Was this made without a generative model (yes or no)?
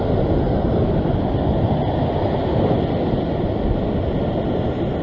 yes